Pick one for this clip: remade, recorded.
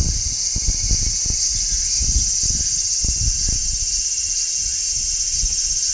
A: recorded